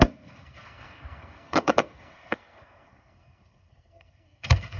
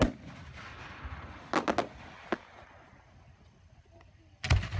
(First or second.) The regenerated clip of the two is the first